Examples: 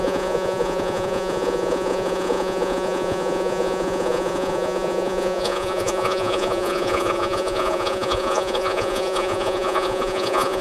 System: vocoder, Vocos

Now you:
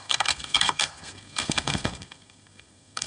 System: codec, SNAC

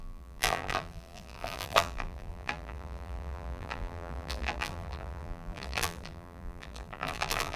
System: vocoder, BigVGAN v2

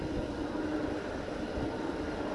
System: none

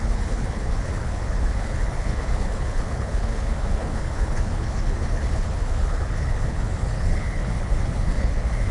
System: codec, HILCodec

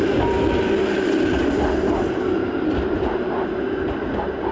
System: none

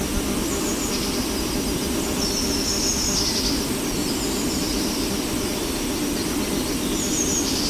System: none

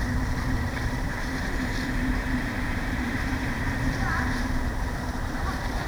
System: vocoder, BigVGAN v2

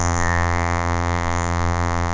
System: vocoder, BigVGAN v2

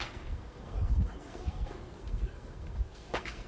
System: codec, SNAC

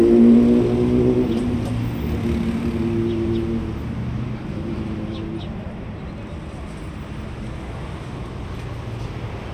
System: none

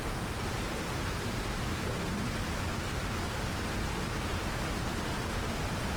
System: vocoder, BigVGAN v2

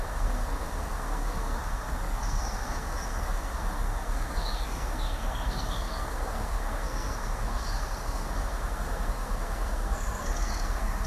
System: codec, SNAC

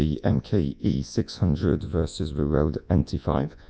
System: vocoder, Vocos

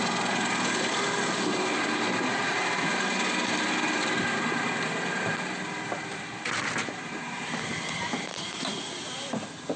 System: none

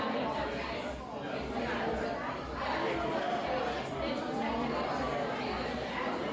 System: none